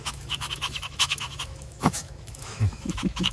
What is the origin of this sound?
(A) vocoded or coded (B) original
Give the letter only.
A